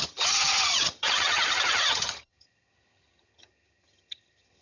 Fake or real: fake